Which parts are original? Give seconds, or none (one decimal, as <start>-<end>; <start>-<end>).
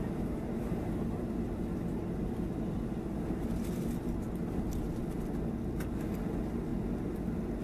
0.0-7.6